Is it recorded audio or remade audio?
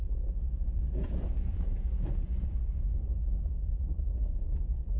remade